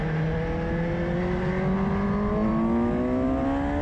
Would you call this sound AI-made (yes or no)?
no